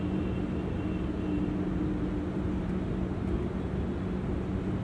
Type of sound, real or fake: real